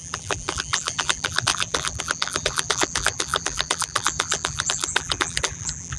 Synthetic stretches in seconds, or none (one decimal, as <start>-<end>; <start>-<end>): 0.0-6.0